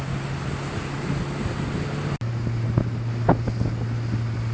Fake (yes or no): no